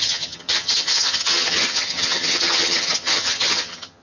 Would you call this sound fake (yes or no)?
yes